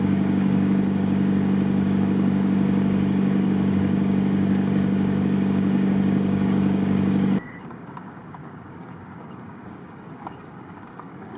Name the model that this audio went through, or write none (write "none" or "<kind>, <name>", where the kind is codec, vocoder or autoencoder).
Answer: codec, DAC